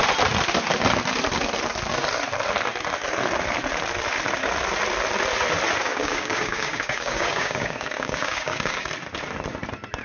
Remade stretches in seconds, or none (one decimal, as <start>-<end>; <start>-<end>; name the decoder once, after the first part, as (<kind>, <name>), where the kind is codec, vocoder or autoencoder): 5.8-8.9 (codec, DAC)